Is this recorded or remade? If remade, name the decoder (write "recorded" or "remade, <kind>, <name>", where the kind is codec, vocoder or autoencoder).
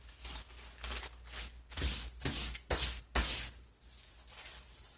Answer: recorded